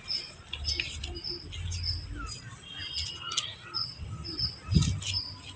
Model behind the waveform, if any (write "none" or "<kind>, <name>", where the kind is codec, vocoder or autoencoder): none